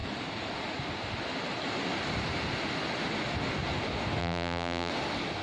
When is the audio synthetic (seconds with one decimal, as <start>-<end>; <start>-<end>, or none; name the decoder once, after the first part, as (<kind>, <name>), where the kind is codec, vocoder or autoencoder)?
4.2-4.9 (vocoder, BigVGAN v2)